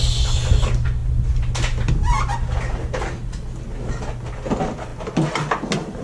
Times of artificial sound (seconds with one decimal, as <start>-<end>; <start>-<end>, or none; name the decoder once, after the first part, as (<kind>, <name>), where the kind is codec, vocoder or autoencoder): none